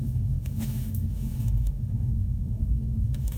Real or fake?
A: fake